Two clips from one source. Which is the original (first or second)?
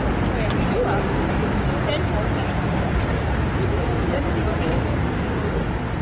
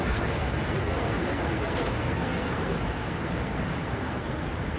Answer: first